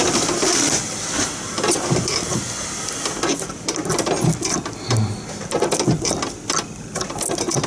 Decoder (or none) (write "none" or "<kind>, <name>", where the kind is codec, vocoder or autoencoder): none